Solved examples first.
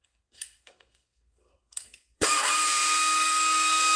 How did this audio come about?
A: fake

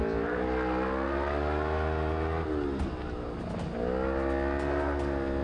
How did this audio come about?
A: real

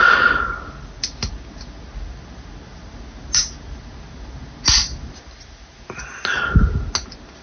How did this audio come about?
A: real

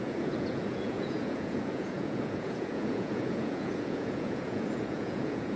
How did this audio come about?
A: fake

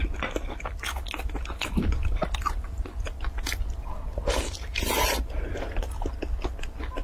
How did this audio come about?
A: real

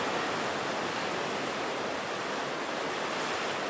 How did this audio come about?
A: real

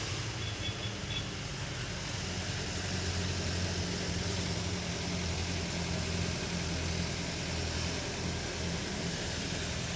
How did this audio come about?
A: real